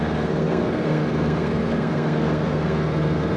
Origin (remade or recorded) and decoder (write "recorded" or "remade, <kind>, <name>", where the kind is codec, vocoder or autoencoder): remade, codec, SNAC